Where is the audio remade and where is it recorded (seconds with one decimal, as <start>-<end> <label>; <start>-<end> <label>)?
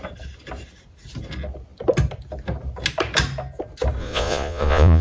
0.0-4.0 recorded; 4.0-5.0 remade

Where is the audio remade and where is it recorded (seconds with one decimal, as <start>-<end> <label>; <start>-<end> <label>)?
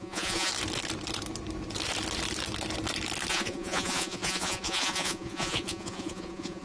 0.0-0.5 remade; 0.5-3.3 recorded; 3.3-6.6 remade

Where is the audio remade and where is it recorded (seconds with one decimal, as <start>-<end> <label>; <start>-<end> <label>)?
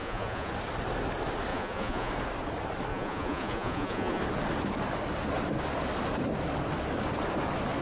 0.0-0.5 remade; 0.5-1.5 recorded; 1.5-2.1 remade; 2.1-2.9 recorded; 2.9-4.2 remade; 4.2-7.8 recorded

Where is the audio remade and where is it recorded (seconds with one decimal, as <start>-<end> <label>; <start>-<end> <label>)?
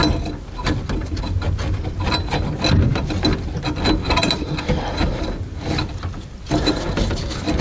0.0-7.6 recorded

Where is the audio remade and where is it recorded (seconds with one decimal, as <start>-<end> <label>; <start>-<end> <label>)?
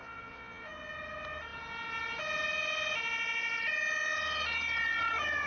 0.0-0.7 remade; 0.7-5.5 recorded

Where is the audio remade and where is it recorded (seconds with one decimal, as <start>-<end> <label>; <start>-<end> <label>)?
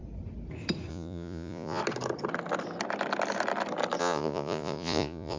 0.0-0.9 recorded; 0.9-1.8 remade; 1.8-4.0 recorded; 4.0-5.4 remade